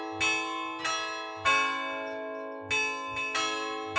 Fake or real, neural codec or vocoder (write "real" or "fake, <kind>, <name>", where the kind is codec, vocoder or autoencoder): real